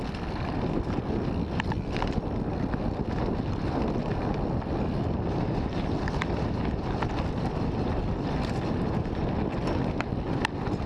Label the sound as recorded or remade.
recorded